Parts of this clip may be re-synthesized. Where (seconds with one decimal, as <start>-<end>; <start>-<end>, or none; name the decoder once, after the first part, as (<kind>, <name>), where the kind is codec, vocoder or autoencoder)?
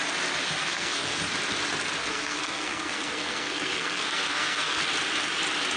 0.6-1.2 (codec, SNAC); 2.0-4.8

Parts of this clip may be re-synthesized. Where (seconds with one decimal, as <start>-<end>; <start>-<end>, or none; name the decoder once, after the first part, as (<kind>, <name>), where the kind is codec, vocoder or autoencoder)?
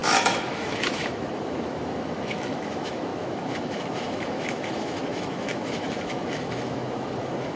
0.0-7.6 (autoencoder, DAC-VAE)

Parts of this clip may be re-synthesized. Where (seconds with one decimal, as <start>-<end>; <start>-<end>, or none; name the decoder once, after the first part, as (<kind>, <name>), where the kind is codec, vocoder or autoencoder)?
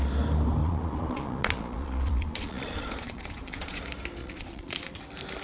0.6-3.8 (vocoder, Vocos); 4.2-4.9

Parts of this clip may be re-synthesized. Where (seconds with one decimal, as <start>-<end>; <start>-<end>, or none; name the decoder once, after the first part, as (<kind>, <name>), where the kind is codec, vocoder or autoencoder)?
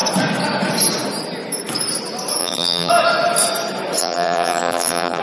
2.4-2.9 (vocoder, BigVGAN v2); 4.0-5.2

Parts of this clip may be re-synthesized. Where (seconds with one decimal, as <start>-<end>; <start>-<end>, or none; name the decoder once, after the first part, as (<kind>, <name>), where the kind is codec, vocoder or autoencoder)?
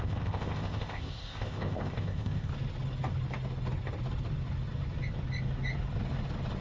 0.0-2.5 (codec, ZipCodec)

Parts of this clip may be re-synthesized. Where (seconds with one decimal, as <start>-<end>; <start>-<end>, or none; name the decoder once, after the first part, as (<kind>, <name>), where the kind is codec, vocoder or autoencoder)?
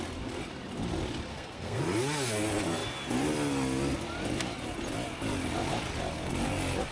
1.3-1.8 (codec, SNAC)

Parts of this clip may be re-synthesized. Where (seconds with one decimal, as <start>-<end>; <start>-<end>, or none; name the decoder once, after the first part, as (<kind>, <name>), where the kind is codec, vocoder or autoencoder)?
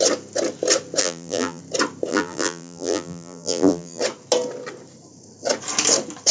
1.0-1.6 (vocoder, BigVGAN v2); 2.1-4.0